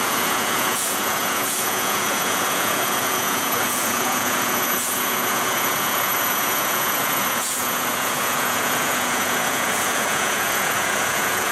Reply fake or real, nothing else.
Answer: fake